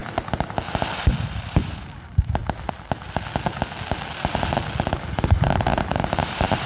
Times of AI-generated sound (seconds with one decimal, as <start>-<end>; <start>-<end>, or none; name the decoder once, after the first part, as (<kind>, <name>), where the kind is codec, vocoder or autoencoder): 1.3-2.4 (vocoder, BigVGAN v2); 4.9-6.7